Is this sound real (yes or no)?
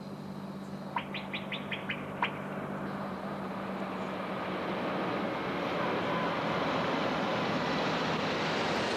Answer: yes